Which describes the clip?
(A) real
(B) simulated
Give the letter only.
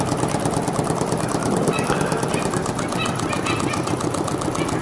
B